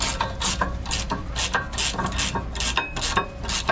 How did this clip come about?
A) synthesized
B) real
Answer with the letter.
B